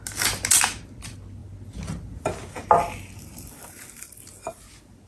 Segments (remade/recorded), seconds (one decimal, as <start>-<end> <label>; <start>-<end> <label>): 0.0-5.1 recorded